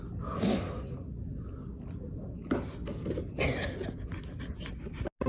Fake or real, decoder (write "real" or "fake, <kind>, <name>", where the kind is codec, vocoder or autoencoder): real